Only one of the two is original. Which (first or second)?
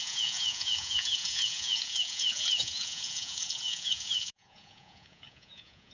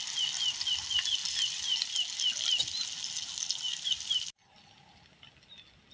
second